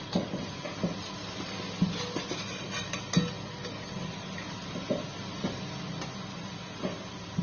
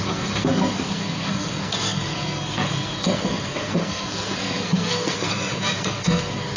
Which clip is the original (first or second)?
first